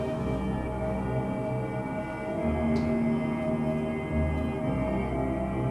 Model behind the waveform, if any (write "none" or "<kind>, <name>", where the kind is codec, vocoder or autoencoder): none